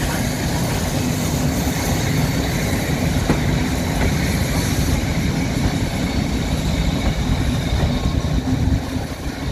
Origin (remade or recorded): recorded